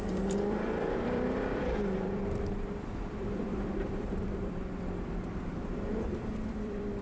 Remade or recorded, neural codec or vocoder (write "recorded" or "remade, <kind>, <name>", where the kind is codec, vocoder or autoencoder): remade, vocoder, BigVGAN v2